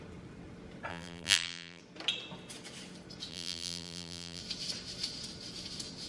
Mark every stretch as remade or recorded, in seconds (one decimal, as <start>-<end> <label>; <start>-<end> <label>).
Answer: 0.0-0.9 recorded; 0.9-1.8 remade; 1.8-3.3 recorded; 3.3-4.4 remade; 4.4-6.1 recorded